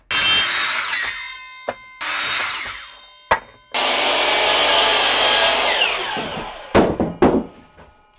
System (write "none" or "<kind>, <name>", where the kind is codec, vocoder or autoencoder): none